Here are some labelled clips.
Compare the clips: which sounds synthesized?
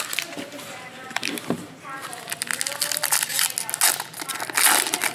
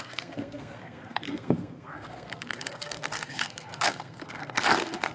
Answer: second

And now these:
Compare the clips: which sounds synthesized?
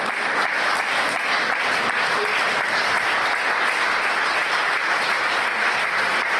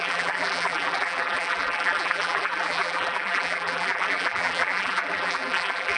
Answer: second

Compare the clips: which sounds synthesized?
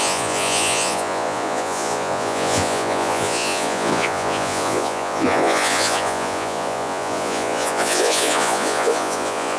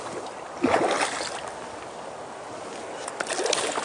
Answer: first